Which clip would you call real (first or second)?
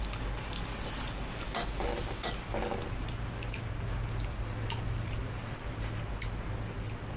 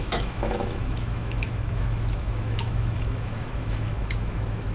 first